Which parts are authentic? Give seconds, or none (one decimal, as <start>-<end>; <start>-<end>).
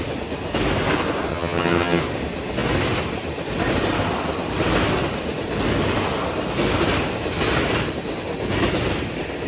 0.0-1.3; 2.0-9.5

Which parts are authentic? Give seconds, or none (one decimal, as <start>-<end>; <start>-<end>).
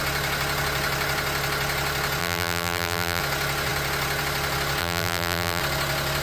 0.0-2.2; 3.2-4.8; 5.6-6.2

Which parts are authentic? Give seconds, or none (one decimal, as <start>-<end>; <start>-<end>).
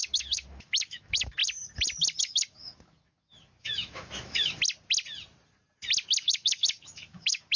1.4-2.2; 4.6-6.2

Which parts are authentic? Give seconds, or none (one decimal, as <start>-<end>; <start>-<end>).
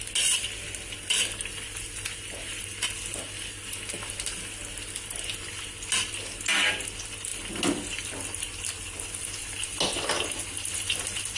0.0-11.4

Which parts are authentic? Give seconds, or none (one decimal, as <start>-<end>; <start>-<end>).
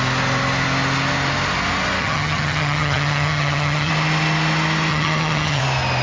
0.0-2.0; 3.9-4.9; 5.6-6.0